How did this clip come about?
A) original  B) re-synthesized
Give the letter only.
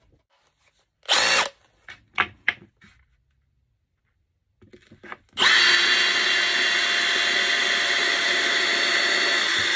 A